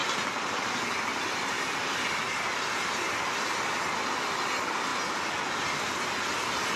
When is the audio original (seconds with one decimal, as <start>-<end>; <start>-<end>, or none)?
0.0-6.8